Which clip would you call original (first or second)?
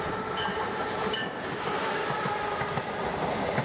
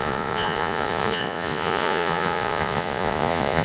first